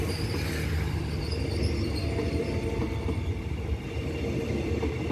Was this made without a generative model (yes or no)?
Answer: yes